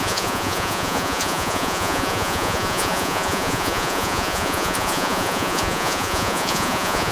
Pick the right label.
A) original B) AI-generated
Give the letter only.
B